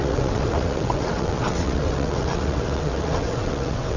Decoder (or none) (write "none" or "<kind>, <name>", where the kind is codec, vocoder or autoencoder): vocoder, WaveNeXt